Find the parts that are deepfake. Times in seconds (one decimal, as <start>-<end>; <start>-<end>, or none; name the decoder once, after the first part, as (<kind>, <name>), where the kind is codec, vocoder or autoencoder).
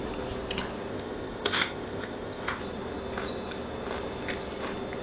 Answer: 0.9-2.6 (codec, ZipCodec)